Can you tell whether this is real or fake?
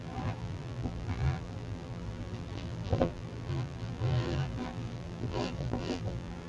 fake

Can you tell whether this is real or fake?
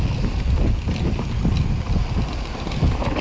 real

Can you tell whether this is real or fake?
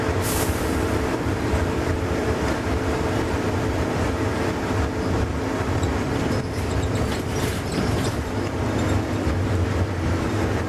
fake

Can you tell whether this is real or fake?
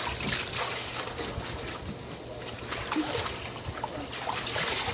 real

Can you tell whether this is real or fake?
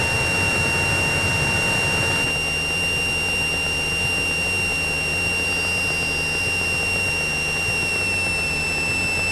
real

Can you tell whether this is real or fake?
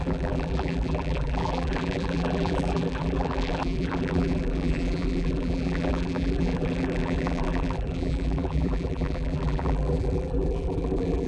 fake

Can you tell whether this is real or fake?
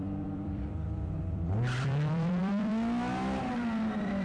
fake